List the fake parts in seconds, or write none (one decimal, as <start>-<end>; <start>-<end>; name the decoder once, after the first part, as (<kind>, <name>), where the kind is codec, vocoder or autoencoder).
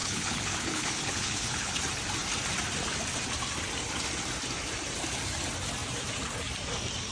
0.0-1.7 (codec, HILCodec)